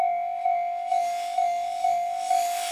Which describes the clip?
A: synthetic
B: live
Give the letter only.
A